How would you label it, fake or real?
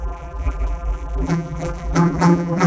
fake